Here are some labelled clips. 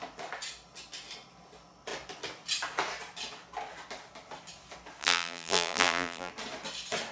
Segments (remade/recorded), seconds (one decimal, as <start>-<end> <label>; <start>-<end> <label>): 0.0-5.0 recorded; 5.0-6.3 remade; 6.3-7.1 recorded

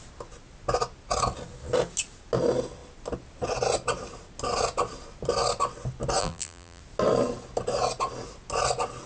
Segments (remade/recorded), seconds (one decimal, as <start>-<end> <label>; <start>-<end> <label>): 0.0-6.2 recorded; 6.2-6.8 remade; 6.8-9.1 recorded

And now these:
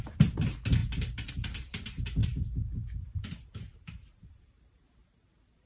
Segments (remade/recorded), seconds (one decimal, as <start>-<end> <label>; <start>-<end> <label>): 0.0-0.8 recorded; 0.8-1.3 remade; 1.3-2.2 recorded; 2.2-5.7 remade

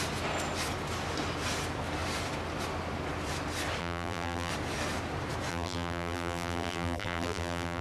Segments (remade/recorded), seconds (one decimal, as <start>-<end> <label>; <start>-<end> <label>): 0.0-3.8 recorded; 3.8-4.5 remade; 4.5-5.5 recorded; 5.5-7.8 remade

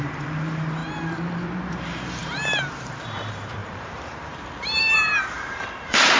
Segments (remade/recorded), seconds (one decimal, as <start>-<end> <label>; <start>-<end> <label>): 0.0-0.8 remade; 0.8-1.7 recorded; 1.7-6.2 remade